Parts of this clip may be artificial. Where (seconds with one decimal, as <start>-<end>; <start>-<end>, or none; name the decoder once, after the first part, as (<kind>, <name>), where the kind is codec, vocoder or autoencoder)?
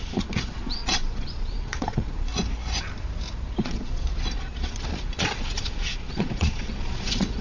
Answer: 0.0-2.3 (vocoder, Vocos); 3.6-7.4